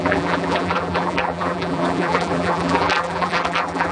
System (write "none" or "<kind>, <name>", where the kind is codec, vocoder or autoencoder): vocoder, BigVGAN v2